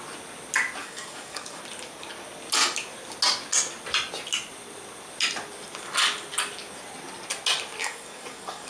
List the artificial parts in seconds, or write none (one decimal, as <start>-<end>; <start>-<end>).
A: 0.8-1.6; 7.8-8.7